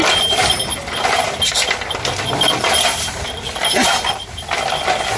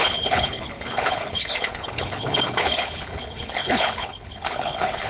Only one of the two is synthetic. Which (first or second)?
second